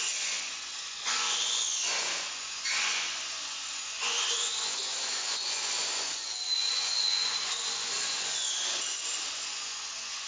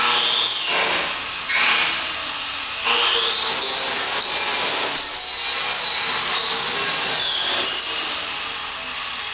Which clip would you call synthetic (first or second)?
first